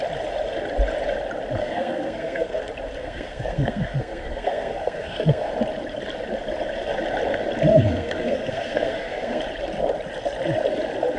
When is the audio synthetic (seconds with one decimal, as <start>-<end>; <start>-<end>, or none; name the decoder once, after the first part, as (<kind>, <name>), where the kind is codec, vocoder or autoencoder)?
1.6-2.6 (codec, SNAC); 3.0-5.5; 7.7-9.4